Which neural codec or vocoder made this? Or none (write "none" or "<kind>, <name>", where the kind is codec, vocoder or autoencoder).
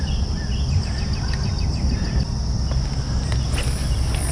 none